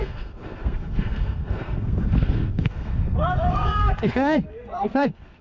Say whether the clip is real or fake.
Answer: fake